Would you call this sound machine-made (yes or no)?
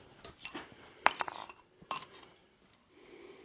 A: no